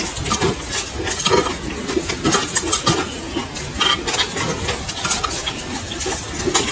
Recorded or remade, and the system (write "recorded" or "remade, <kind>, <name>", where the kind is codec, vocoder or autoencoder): recorded